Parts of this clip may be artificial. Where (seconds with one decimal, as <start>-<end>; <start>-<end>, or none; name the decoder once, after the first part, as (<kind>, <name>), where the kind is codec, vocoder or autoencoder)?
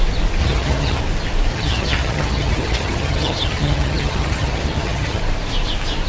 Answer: 0.4-1.0 (vocoder, HiFi-GAN); 1.5-5.2